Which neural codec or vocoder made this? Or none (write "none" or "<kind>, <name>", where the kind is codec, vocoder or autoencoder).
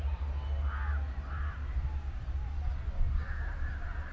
none